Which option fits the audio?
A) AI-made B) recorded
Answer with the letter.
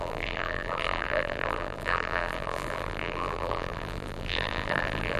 A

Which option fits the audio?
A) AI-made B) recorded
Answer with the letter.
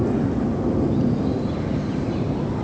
B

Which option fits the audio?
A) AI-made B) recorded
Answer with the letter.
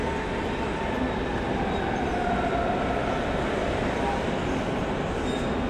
B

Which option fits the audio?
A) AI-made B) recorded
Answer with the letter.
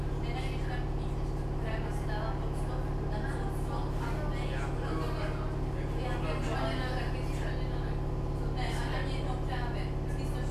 B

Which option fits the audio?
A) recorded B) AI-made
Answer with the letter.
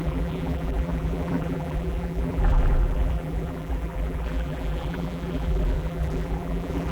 B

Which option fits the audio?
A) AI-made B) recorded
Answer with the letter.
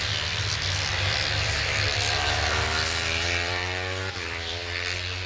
A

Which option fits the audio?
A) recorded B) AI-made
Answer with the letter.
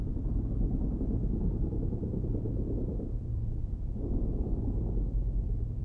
B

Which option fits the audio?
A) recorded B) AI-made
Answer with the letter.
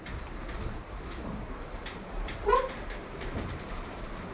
B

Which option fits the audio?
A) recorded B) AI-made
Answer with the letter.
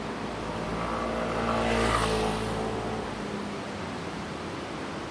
A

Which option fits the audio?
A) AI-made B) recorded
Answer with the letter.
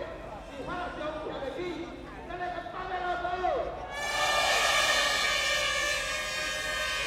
B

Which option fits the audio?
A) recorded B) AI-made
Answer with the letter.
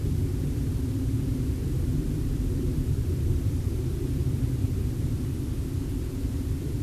B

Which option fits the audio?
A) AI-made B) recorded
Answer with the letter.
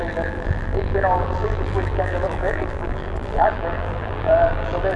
A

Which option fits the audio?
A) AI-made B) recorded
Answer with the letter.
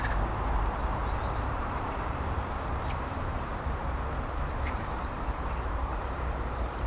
A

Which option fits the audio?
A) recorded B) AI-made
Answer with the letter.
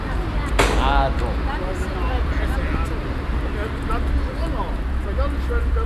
A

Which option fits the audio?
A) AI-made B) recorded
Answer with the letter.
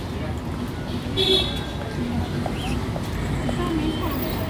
B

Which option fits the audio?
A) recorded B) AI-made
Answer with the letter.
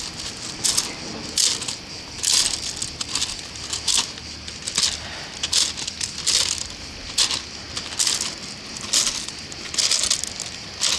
A